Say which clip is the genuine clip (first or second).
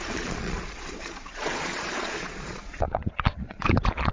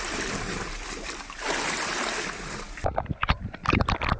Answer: second